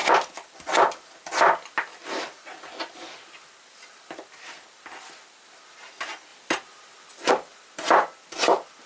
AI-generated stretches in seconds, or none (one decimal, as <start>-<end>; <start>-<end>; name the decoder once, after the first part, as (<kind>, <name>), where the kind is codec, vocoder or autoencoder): none